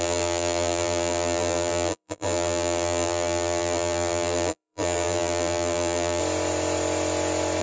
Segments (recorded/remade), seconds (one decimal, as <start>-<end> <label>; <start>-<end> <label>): 0.0-6.2 remade; 6.2-7.6 recorded